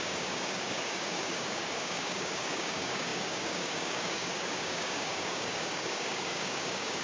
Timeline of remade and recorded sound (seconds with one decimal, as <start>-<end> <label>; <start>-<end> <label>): 0.0-7.0 remade